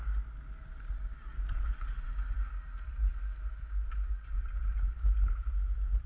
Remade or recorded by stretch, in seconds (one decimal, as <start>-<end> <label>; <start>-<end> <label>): 0.0-6.1 recorded